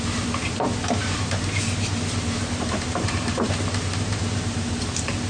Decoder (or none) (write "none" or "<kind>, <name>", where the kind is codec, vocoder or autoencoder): vocoder, BigVGAN v2